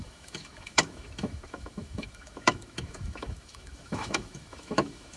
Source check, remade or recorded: remade